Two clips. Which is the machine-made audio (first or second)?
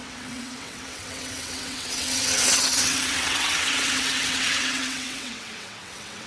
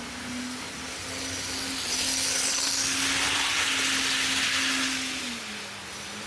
first